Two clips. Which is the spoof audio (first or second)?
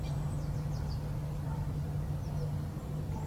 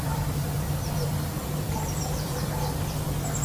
second